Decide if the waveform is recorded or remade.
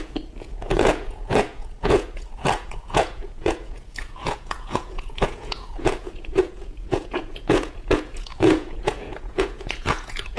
remade